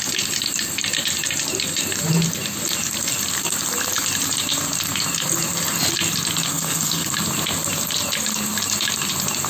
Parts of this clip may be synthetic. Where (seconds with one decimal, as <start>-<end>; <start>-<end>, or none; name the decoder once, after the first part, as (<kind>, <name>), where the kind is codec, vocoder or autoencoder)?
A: 6.5-7.1 (codec, SNAC)